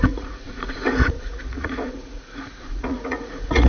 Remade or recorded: remade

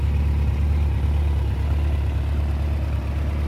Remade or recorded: recorded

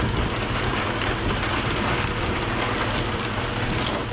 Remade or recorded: recorded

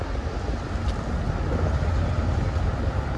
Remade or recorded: recorded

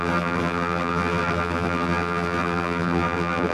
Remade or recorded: remade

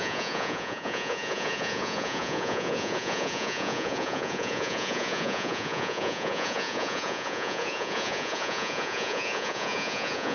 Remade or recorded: remade